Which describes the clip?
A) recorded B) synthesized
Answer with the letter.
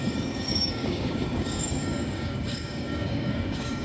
B